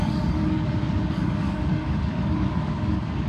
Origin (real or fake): fake